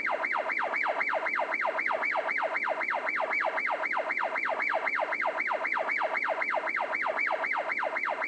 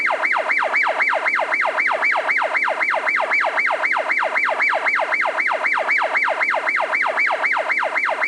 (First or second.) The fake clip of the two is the first